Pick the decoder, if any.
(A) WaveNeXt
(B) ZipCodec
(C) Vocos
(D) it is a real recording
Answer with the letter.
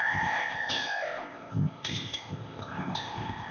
B